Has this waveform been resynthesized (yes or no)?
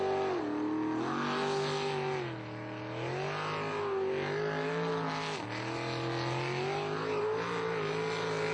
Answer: no